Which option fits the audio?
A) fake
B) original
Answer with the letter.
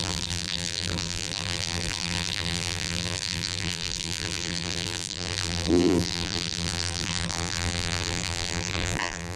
A